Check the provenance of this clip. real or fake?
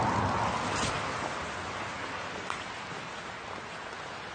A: real